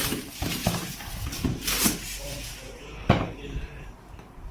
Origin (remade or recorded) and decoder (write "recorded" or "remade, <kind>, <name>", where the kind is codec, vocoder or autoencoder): remade, vocoder, BigVGAN v2